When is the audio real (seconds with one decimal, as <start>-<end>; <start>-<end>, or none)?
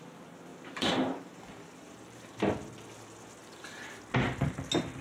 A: 0.0-0.5; 2.3-3.4; 3.9-5.0